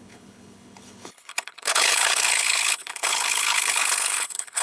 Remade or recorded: remade